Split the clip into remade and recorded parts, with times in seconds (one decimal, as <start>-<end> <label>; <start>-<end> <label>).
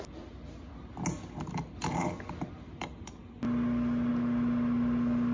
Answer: 0.0-5.3 recorded